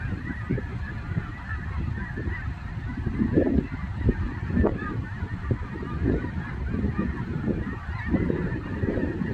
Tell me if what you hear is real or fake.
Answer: real